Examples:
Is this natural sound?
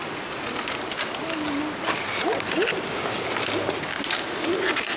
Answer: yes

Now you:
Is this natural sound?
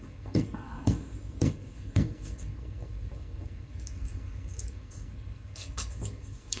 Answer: no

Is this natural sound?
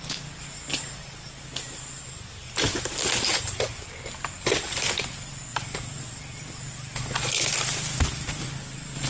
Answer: yes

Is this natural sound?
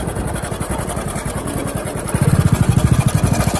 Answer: yes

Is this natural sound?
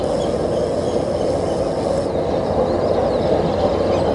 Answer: yes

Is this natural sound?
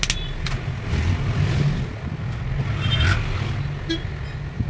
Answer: yes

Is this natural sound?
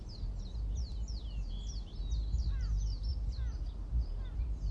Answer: yes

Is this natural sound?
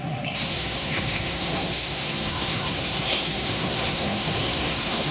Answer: no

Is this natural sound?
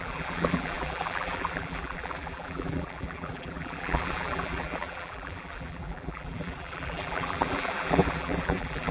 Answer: no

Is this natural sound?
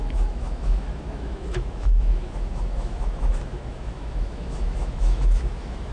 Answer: no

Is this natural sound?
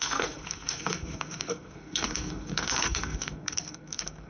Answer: no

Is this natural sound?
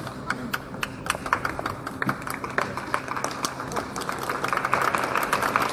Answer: yes